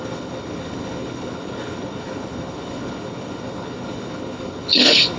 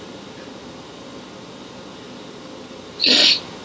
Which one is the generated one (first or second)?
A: first